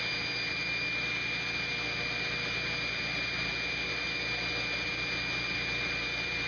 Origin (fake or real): real